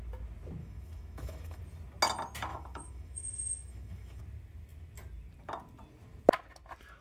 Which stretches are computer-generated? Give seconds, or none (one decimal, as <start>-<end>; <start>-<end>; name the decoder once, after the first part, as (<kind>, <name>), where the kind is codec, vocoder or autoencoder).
0.6-1.6 (autoencoder, DAC-VAE); 2.5-4.2

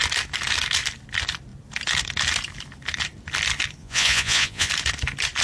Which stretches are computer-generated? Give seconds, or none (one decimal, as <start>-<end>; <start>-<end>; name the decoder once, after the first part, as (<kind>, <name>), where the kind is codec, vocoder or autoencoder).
3.8-4.7 (vocoder, Vocos)